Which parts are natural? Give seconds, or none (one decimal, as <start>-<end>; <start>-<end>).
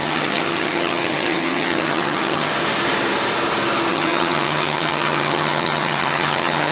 2.5-3.9